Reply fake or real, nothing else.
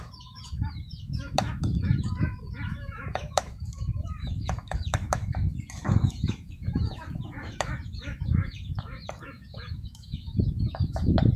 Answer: fake